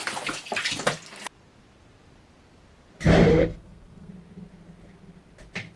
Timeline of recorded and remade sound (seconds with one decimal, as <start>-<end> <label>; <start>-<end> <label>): 0.0-3.3 recorded; 3.3-4.1 remade; 4.1-5.8 recorded